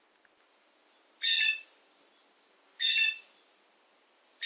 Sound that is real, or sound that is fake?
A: real